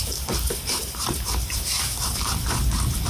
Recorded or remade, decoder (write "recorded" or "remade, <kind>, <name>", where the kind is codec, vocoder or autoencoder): remade, vocoder, BigVGAN v2